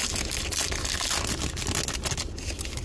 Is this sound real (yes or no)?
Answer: yes